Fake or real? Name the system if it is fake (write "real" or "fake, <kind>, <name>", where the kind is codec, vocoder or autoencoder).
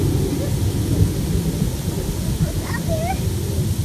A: real